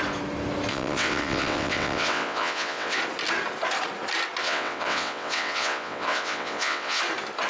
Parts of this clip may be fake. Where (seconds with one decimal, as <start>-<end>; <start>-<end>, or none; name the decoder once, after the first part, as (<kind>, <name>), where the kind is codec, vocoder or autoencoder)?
0.7-3.0 (vocoder, WaveNeXt); 4.4-7.0

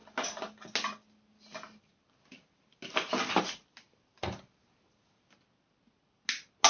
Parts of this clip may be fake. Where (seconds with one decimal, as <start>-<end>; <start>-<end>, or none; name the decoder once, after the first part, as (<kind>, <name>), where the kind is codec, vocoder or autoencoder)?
none

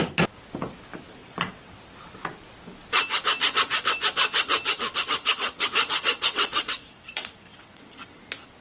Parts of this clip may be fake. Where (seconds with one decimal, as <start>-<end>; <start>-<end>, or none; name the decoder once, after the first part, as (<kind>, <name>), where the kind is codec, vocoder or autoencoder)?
1.2-1.8 (vocoder, WaveNeXt); 5.2-8.2

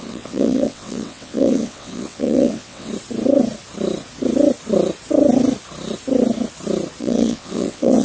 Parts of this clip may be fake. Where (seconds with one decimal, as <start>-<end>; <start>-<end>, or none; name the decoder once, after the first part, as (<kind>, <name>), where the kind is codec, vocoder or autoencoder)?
0.0-2.9 (vocoder, WaveNeXt); 7.0-8.0

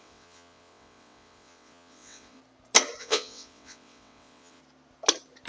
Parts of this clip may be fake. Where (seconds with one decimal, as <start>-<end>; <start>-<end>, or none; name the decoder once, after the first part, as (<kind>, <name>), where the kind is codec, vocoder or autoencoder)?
0.0-2.4 (vocoder, WaveNeXt); 3.0-4.6